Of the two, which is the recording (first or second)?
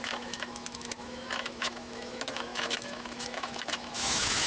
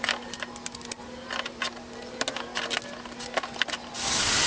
second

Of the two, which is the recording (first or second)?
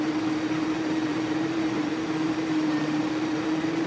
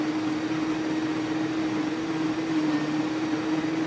second